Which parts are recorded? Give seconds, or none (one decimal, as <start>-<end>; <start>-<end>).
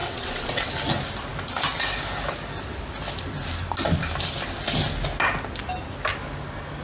0.7-6.8